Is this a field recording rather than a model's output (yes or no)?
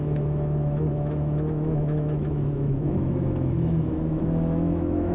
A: no